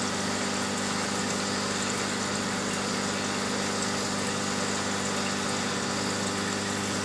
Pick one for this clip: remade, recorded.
recorded